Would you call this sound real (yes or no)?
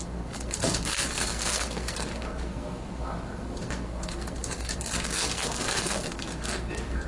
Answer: no